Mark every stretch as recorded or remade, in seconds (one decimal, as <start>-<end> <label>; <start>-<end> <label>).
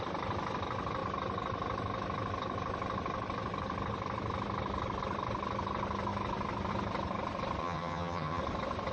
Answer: 0.0-7.6 recorded; 7.6-8.4 remade; 8.4-8.9 recorded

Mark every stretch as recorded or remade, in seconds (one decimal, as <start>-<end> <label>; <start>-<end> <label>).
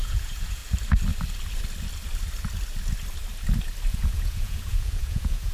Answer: 0.0-0.6 remade; 0.6-3.9 recorded; 3.9-5.5 remade